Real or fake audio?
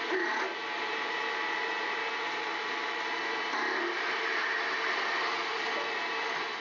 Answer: real